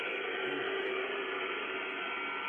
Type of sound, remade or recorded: recorded